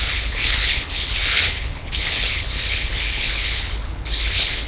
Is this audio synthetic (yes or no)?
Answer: yes